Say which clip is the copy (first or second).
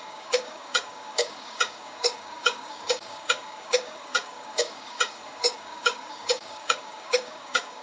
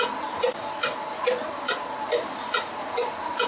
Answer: first